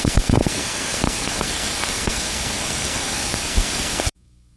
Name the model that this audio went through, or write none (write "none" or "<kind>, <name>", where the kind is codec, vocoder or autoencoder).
codec, SNAC